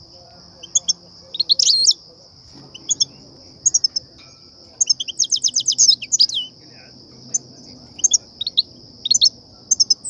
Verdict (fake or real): real